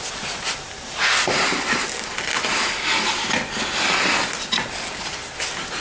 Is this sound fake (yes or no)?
no